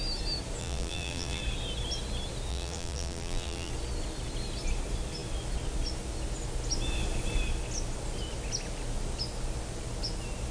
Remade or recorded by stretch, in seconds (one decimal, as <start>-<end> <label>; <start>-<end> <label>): 0.0-0.6 recorded; 0.6-1.4 remade; 1.4-2.5 recorded; 2.5-3.7 remade; 3.7-10.5 recorded